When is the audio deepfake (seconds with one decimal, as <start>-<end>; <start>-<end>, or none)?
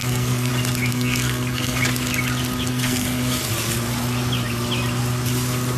0.0-0.5; 0.9-1.8; 2.7-3.2